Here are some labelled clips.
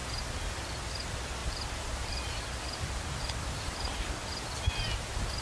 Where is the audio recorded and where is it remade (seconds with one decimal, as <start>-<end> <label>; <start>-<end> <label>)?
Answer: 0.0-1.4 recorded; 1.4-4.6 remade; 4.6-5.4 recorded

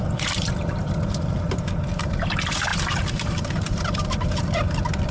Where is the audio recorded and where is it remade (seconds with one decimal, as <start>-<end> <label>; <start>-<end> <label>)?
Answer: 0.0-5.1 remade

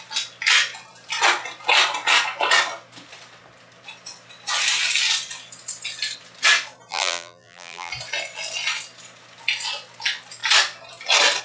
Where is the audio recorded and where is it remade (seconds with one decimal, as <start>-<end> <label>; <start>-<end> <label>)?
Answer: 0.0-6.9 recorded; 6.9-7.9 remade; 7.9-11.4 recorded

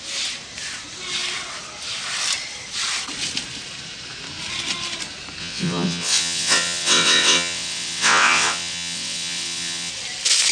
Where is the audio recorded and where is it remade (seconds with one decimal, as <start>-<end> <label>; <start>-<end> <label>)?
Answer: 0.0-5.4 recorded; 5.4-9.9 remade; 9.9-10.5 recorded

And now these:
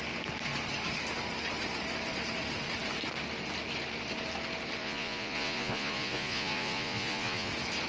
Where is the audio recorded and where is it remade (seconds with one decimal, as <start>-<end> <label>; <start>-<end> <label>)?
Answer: 0.0-4.8 recorded; 4.8-7.5 remade; 7.5-7.9 recorded